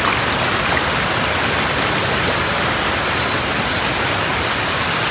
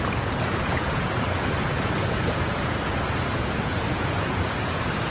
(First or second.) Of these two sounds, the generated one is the second